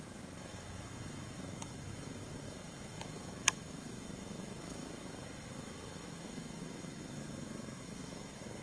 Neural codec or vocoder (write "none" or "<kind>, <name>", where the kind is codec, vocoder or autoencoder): autoencoder, DAC-VAE